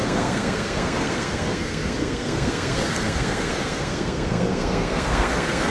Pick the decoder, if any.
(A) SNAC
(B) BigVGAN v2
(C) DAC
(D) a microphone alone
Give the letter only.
A